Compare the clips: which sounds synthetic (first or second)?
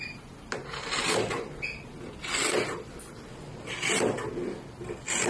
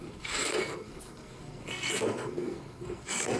second